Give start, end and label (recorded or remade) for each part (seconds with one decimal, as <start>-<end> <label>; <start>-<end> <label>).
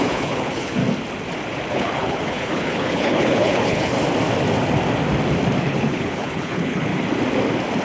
0.0-0.8 remade; 0.8-1.7 recorded; 1.7-3.9 remade; 3.9-5.6 recorded; 5.6-6.9 remade; 6.9-7.8 recorded